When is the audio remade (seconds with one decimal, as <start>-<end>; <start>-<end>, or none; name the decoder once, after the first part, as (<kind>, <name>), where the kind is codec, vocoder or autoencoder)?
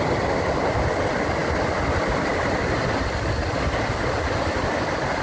none